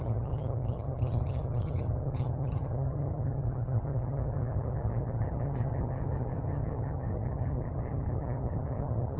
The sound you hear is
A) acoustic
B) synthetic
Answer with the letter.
B